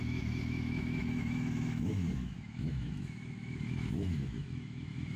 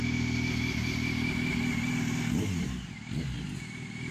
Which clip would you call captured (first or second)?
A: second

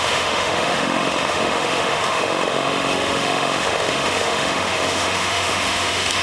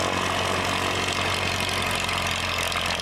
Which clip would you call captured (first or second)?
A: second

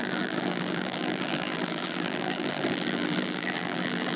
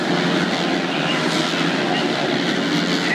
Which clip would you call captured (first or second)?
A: second